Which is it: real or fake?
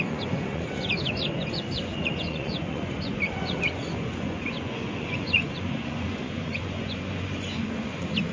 fake